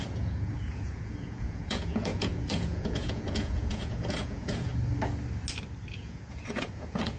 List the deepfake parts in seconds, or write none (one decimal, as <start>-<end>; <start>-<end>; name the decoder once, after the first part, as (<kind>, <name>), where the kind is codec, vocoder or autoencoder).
0.0-4.7 (vocoder, Vocos); 5.9-7.2